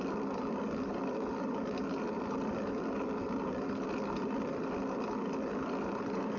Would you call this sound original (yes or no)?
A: yes